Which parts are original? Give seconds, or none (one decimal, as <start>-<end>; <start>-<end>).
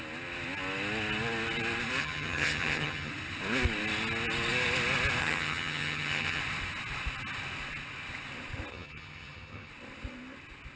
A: 0.0-2.0; 3.1-5.2; 6.4-8.7; 9.7-10.8